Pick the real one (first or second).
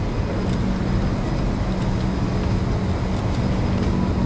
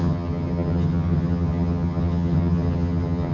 first